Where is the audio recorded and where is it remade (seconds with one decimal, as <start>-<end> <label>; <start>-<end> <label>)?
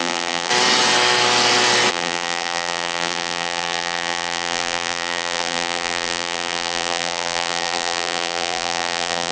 0.0-0.5 remade; 0.5-1.9 recorded; 1.9-9.3 remade